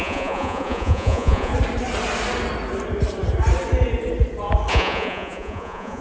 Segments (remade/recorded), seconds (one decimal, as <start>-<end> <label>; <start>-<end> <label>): 0.0-1.5 remade; 1.5-4.7 recorded; 4.7-6.0 remade